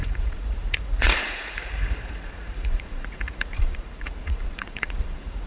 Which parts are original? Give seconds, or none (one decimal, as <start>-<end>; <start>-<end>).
none